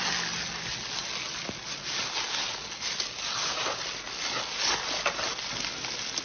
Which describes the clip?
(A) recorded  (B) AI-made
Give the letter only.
A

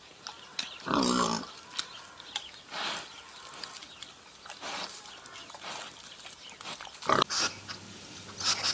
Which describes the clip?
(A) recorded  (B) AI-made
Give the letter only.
A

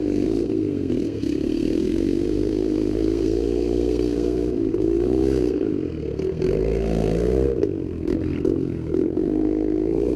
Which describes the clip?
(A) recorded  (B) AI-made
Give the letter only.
B